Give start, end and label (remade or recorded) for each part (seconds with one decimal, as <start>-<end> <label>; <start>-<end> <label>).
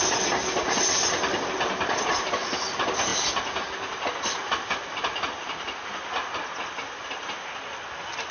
0.0-8.3 recorded